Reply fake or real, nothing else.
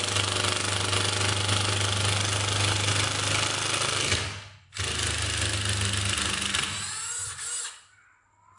real